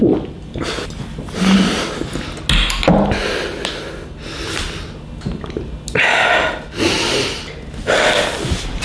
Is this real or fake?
real